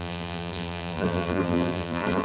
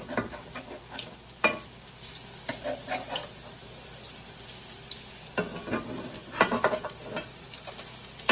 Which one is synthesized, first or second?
first